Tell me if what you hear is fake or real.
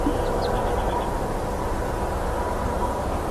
real